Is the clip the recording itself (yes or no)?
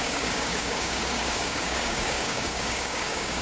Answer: no